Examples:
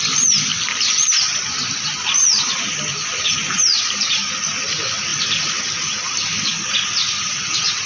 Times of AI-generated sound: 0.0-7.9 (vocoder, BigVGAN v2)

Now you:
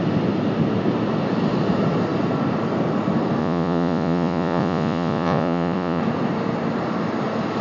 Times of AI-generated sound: 3.4-6.0 (vocoder, Vocos)

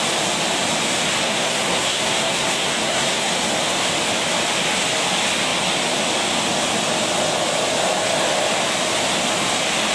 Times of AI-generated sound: 1.2-3.3 (codec, SNAC)

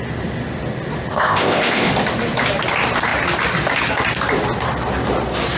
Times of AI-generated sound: 1.1-1.9 (codec, ZipCodec)

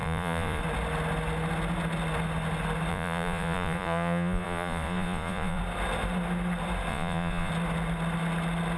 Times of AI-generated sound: 0.0-0.6 (vocoder, Vocos); 2.9-5.6; 6.9-7.5

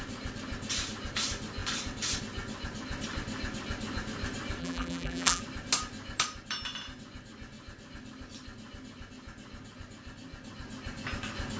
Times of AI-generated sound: 4.6-5.4 (vocoder, BigVGAN v2)

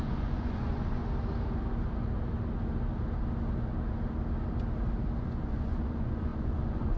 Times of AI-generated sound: 0.0-1.0 (vocoder, Vocos); 5.2-7.0